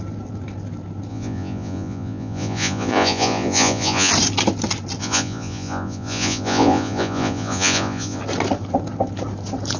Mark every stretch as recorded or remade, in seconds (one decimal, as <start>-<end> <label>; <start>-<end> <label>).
0.0-1.1 recorded; 1.1-4.1 remade; 4.1-5.0 recorded; 5.0-8.2 remade; 8.2-9.8 recorded